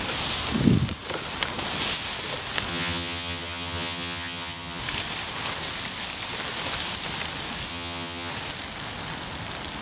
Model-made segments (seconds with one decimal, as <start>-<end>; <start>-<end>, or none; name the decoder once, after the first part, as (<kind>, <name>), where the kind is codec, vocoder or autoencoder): 2.7-4.8 (vocoder, HiFi-GAN); 7.7-8.3